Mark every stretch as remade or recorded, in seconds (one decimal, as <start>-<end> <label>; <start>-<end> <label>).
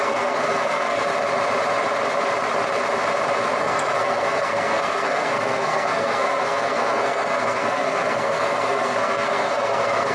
0.0-1.1 remade; 1.1-3.6 recorded; 3.6-10.1 remade